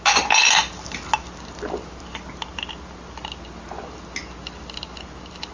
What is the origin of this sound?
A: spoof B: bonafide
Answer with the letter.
B